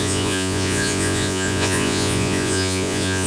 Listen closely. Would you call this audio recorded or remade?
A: remade